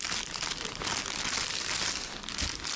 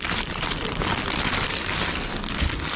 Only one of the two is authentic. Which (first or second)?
first